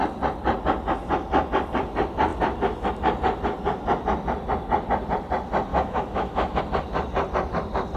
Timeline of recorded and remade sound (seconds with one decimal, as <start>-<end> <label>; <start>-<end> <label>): 0.0-5.7 recorded; 5.7-6.6 remade; 6.6-8.0 recorded